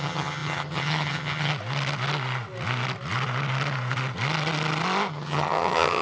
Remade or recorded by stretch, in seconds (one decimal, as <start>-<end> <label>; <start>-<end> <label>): 0.0-1.5 remade; 1.5-5.1 recorded; 5.1-6.0 remade